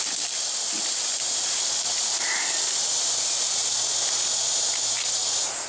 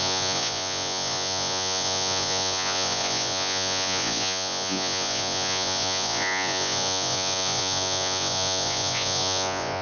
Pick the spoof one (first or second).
second